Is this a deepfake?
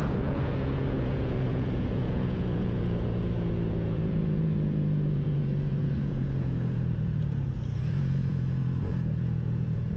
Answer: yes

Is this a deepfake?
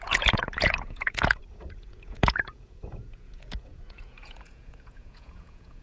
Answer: yes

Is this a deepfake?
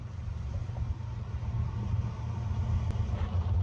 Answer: no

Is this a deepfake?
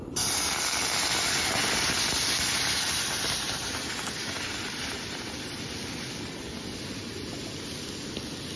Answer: no